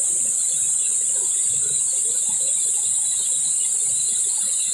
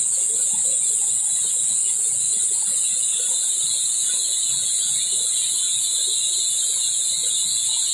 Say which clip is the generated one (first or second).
second